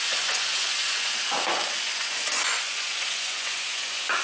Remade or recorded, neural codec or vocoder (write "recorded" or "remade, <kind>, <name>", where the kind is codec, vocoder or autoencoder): remade, vocoder, Vocos